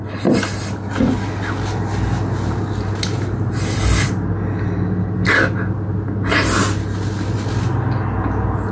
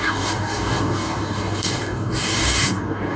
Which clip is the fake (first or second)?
second